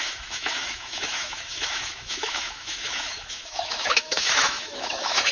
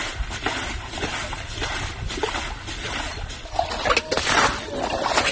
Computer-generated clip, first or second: first